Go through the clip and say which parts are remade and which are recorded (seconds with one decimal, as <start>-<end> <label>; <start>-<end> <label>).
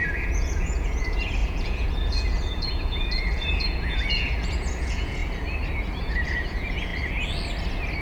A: 0.0-5.2 remade; 5.2-6.0 recorded; 6.0-6.9 remade; 6.9-8.0 recorded